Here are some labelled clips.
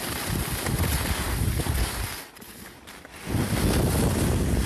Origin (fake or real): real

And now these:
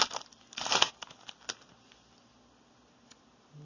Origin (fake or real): real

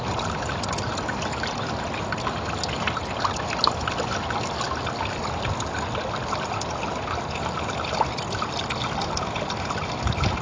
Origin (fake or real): real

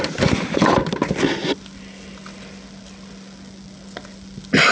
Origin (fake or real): real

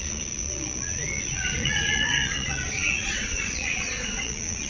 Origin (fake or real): fake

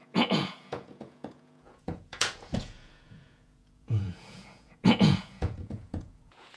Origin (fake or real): fake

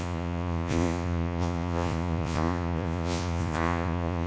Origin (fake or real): fake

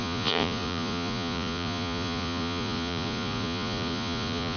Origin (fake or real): fake